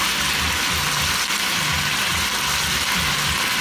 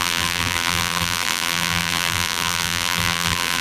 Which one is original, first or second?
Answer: first